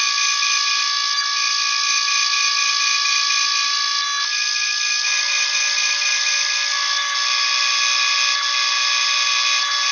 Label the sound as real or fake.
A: real